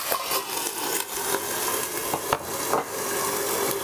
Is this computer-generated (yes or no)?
no